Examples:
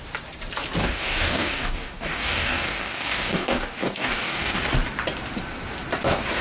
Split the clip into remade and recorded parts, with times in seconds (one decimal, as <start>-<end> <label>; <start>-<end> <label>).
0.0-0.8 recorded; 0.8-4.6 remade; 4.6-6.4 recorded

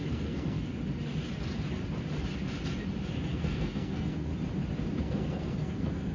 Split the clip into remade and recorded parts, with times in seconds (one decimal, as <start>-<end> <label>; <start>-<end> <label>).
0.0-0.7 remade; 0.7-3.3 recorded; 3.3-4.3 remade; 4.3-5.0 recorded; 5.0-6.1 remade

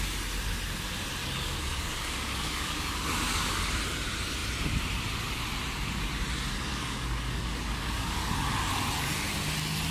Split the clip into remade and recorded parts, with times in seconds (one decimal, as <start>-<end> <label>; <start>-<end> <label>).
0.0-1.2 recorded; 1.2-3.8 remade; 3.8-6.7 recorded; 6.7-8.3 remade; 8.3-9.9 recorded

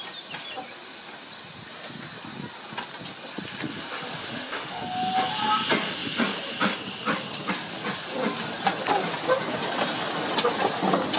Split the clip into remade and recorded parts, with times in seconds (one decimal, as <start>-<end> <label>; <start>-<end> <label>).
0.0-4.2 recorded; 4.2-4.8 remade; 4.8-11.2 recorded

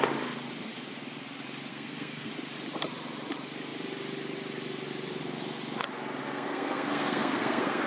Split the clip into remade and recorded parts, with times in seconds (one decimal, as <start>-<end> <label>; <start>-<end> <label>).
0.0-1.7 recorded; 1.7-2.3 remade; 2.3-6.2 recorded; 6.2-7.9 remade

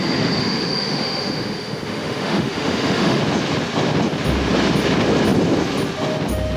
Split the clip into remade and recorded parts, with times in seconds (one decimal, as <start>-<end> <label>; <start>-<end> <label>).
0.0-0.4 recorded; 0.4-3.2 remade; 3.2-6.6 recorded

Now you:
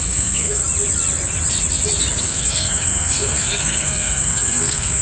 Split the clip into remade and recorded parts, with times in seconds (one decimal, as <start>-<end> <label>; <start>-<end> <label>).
0.0-0.6 remade; 0.6-2.2 recorded; 2.2-5.0 remade